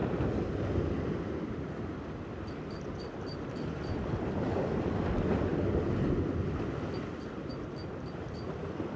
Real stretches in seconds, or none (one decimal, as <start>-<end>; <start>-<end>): 0.0-9.0